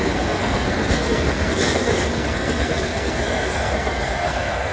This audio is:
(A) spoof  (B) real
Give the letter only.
A